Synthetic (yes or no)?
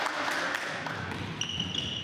no